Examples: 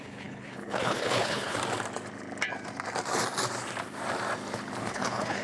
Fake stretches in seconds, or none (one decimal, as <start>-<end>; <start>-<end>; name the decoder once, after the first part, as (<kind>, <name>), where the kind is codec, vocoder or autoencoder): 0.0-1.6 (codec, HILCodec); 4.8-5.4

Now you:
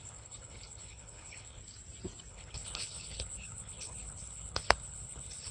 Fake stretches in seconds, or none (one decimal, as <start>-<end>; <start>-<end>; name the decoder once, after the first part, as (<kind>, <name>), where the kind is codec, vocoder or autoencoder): 0.0-1.6 (codec, HILCodec); 2.3-5.5

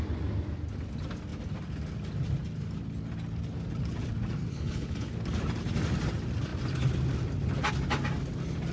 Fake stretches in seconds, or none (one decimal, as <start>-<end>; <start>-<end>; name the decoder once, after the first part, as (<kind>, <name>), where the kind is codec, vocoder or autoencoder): 4.5-5.1 (codec, HILCodec)

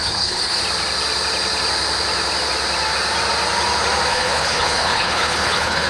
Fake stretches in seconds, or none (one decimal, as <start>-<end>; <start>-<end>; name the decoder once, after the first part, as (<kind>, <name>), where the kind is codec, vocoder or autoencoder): 0.0-0.6 (codec, HILCodec); 4.1-5.9